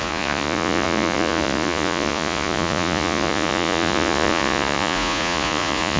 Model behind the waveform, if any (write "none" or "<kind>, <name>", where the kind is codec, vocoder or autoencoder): vocoder, Vocos